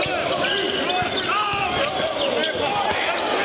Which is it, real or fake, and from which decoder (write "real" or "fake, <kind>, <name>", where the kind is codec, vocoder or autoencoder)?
real